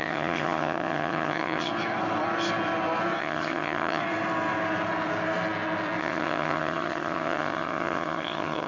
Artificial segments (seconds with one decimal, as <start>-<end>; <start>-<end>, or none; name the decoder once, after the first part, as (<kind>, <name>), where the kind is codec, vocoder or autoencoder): 0.0-1.7 (vocoder, HiFi-GAN); 3.2-4.0; 6.0-8.7